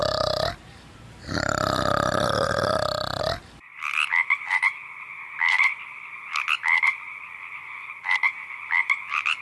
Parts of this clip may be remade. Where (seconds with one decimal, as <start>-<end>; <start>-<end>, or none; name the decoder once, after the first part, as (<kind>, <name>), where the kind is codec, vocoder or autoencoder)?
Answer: 0.0-1.5 (vocoder, BigVGAN v2); 8.4-9.4